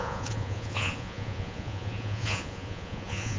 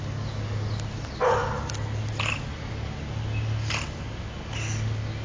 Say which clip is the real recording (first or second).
second